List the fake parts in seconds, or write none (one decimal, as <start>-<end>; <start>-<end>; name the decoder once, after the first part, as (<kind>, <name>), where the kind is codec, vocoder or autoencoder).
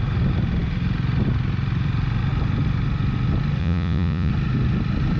3.6-4.3 (vocoder, Vocos)